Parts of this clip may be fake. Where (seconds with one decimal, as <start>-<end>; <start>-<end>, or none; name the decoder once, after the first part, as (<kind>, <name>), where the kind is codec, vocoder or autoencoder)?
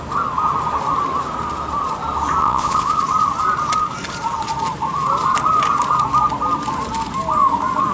2.4-3.0 (vocoder, Vocos)